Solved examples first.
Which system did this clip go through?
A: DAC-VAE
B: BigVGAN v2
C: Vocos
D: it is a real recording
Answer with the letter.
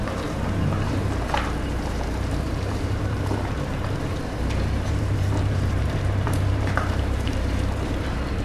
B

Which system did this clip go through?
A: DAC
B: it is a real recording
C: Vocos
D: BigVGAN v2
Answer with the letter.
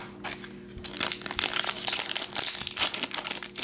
B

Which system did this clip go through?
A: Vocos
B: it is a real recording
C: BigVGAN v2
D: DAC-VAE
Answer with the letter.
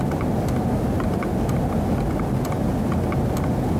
B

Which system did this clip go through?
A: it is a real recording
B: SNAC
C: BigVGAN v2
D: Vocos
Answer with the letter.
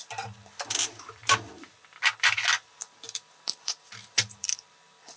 C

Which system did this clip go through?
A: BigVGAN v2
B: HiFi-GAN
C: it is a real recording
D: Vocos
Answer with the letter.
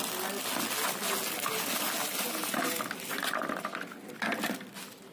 C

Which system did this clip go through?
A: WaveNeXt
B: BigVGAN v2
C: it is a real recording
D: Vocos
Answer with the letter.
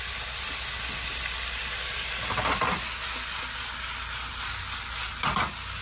C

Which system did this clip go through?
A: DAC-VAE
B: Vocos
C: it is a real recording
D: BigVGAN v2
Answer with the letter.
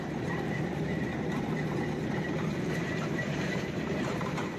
D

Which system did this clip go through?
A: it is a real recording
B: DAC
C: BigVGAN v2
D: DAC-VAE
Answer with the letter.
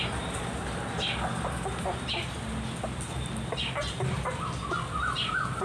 A